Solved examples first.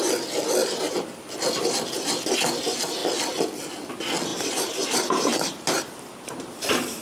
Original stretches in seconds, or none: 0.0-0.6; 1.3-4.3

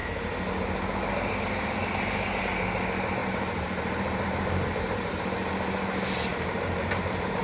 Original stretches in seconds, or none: 0.0-3.2; 5.2-6.3

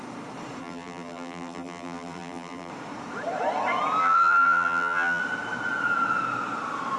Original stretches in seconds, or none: 0.0-0.6; 2.7-4.0; 5.2-7.0

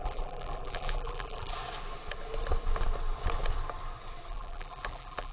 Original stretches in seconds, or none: 1.5-4.3

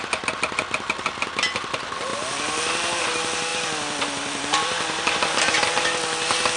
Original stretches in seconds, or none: 0.0-2.1; 3.0-3.5; 5.4-6.6

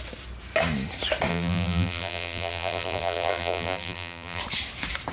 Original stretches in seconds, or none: 0.0-1.3; 4.4-5.1

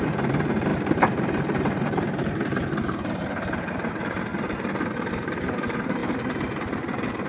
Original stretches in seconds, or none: none